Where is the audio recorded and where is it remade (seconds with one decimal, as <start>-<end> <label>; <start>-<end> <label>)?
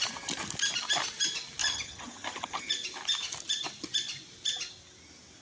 0.0-1.6 recorded; 1.6-2.7 remade; 2.7-5.4 recorded